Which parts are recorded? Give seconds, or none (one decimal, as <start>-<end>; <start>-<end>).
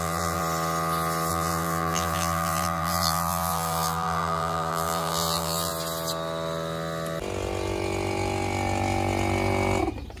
0.4-1.3; 5.7-10.2